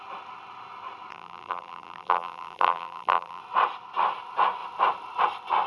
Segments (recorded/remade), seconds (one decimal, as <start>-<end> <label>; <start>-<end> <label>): 0.0-1.1 recorded; 1.1-3.4 remade; 3.4-5.7 recorded